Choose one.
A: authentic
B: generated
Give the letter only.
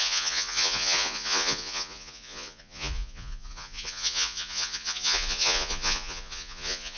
B